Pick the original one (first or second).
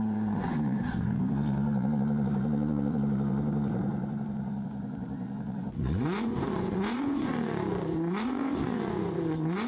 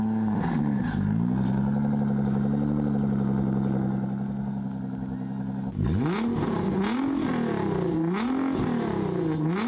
second